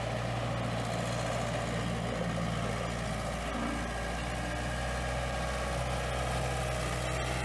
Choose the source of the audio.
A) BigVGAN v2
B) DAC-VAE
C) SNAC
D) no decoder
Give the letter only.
D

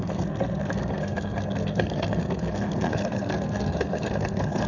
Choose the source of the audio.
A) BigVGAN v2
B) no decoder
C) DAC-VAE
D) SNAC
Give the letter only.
D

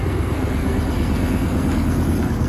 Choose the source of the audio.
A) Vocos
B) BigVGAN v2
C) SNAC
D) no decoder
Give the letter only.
C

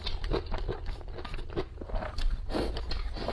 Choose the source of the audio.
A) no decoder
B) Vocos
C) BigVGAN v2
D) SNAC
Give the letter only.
A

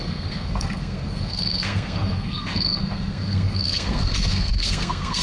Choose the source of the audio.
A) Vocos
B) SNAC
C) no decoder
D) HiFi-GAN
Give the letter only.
B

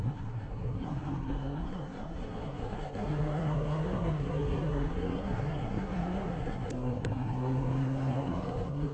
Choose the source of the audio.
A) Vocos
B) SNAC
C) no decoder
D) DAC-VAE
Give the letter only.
B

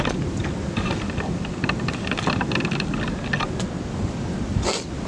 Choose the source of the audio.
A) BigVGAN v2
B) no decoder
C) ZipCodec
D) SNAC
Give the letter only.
B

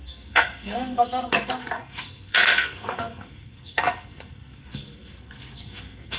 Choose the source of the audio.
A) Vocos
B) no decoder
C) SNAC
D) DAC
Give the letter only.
C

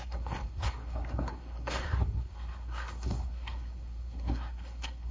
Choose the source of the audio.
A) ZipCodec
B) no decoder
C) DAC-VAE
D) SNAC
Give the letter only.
D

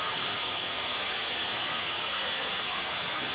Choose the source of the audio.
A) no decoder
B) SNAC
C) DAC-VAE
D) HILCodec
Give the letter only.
B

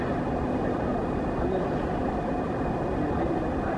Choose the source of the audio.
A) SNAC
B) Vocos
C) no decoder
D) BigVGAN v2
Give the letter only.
C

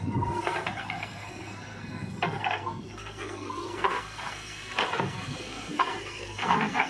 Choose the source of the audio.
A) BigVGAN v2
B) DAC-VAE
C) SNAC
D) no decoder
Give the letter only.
C